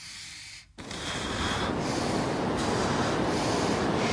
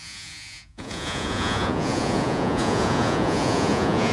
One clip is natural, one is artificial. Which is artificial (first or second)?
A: second